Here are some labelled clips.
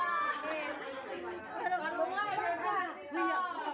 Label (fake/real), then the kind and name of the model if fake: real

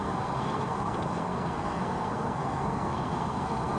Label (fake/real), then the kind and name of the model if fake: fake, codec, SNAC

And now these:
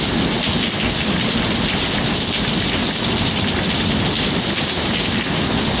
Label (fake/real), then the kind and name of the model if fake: real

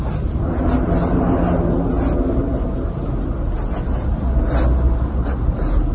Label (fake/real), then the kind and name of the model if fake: real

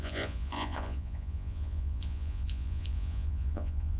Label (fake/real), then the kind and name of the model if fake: fake, vocoder, Vocos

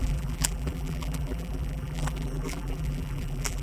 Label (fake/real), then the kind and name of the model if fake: fake, vocoder, BigVGAN v2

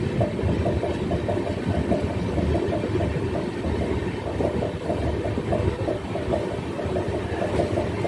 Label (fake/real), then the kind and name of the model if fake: real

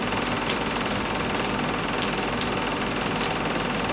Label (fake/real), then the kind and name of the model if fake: real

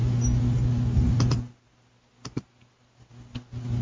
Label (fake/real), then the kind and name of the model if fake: real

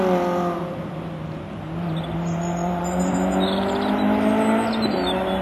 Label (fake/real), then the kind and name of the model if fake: real